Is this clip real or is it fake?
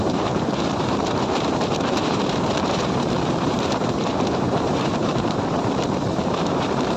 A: fake